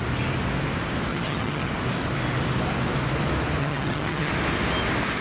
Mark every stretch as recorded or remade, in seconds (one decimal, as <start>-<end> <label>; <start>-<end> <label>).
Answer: 0.0-1.1 recorded; 1.1-1.7 remade; 1.7-3.6 recorded; 3.6-4.3 remade; 4.3-5.2 recorded